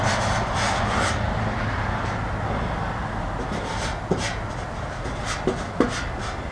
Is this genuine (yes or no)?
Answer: yes